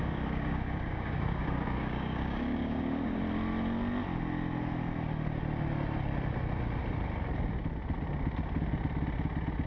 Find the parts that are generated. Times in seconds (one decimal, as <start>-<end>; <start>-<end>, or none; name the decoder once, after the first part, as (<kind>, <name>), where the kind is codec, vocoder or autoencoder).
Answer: 0.0-3.2 (codec, DAC)

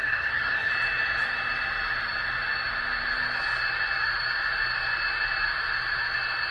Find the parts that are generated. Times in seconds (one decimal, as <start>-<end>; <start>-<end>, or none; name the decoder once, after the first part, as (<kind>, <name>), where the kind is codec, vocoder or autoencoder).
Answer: 0.0-0.7 (codec, SNAC)

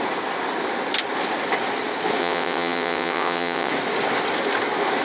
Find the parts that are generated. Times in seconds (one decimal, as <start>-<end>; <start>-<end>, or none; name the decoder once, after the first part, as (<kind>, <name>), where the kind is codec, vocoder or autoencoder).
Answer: 2.2-3.7 (vocoder, WaveNeXt)

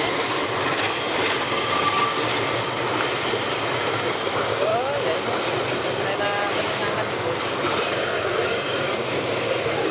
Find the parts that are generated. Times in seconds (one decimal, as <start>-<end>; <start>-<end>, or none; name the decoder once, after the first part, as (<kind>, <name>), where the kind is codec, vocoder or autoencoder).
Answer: 0.0-0.4 (codec, DAC); 1.4-2.3; 4.1-4.7; 6.2-6.8; 7.8-9.9

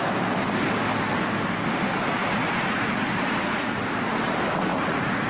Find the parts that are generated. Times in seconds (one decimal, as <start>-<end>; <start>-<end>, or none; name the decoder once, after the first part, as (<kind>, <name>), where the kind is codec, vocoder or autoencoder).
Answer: 2.2-3.9 (vocoder, Vocos); 4.7-5.3